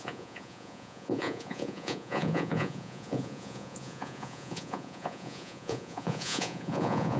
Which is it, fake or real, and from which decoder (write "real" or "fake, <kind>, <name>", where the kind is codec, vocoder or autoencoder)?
fake, vocoder, Vocos